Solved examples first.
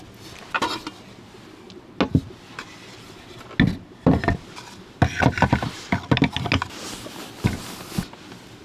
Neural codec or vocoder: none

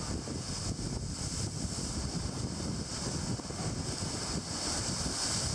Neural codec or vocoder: none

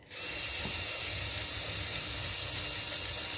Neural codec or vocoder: none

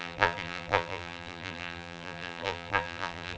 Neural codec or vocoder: vocoder, BigVGAN v2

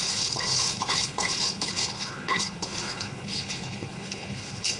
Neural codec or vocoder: codec, HILCodec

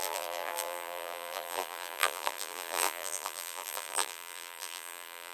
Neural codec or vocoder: vocoder, BigVGAN v2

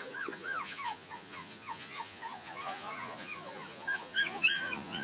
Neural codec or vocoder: vocoder, Vocos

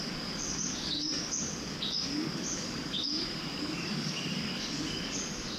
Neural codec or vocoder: codec, DAC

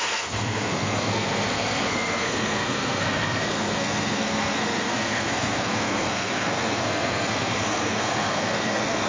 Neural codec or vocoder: codec, SNAC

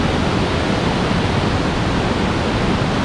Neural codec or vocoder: none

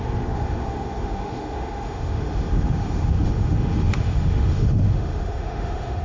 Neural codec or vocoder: autoencoder, DAC-VAE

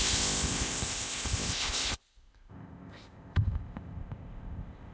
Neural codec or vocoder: codec, ZipCodec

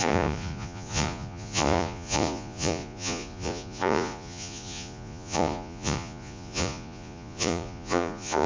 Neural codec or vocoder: vocoder, Vocos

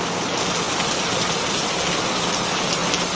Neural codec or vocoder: none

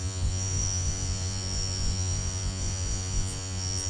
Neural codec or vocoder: vocoder, Vocos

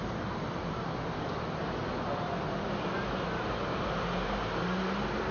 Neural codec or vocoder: none